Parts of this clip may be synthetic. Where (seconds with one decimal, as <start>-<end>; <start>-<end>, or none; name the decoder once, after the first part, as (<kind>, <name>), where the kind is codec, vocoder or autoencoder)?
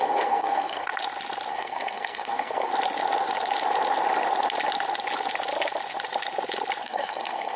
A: 0.0-0.9 (codec, SNAC); 1.5-2.7; 6.8-7.6